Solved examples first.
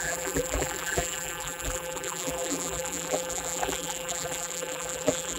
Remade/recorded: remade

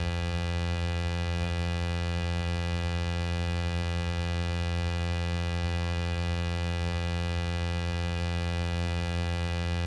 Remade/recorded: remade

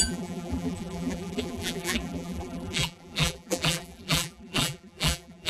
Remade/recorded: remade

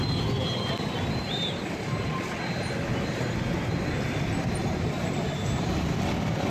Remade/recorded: recorded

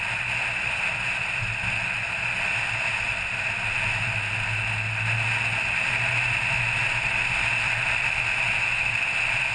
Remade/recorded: recorded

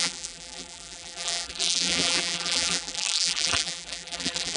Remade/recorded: remade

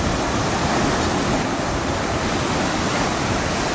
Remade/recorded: recorded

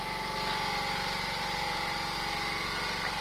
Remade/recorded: recorded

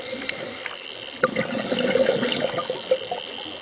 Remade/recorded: recorded